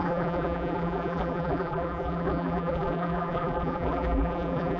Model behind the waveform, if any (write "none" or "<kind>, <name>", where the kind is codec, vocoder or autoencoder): vocoder, BigVGAN v2